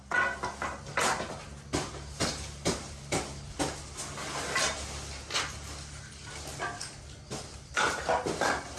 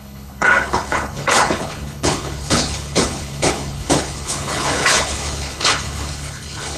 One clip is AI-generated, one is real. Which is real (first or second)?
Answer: first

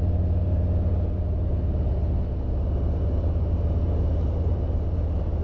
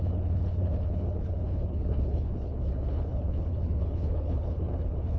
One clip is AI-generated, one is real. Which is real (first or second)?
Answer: first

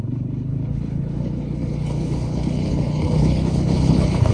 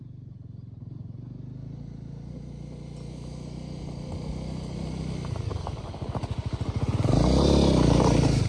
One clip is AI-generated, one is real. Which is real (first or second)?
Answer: second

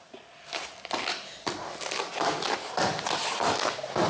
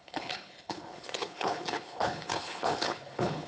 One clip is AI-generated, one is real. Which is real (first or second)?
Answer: first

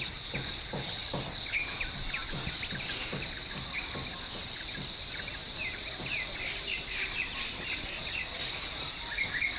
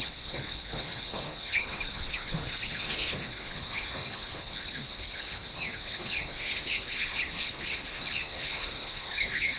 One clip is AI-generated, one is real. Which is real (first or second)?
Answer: first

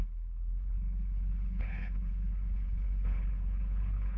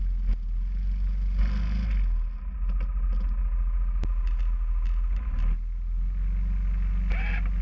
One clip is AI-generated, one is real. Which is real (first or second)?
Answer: second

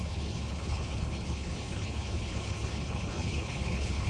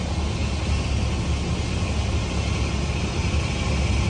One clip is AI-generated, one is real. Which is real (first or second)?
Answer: second